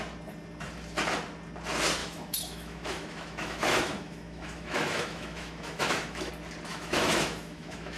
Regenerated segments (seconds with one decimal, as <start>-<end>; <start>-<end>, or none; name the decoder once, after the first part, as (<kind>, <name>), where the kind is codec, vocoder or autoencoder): 2.0-6.3 (autoencoder, DAC-VAE); 6.7-8.0

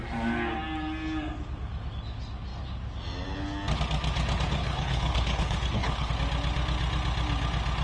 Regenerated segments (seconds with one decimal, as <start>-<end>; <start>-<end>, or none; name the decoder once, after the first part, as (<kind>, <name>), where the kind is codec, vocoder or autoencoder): 4.6-6.1 (codec, HILCodec)

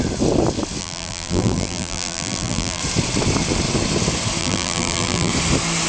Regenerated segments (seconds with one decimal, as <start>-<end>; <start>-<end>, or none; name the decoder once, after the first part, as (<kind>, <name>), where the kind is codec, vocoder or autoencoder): 0.8-2.8 (vocoder, BigVGAN v2); 4.4-5.3

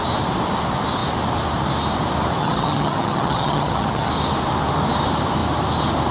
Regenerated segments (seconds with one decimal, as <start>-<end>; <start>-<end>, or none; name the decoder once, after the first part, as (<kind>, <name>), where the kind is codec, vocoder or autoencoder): 2.4-4.1 (vocoder, HiFi-GAN)

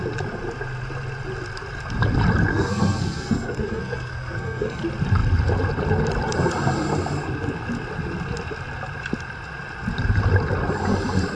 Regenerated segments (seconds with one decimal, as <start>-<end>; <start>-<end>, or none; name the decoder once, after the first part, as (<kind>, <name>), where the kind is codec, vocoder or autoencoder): 2.5-4.8 (codec, SNAC)

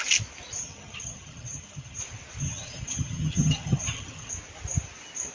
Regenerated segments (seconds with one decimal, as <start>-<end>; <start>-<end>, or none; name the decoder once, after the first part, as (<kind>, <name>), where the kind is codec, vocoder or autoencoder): 0.6-2.0 (vocoder, HiFi-GAN); 2.4-4.3